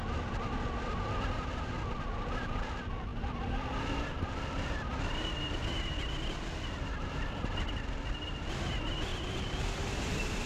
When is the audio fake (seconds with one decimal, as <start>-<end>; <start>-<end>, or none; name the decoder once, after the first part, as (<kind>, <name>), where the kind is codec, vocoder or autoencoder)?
9.1-10.5 (vocoder, BigVGAN v2)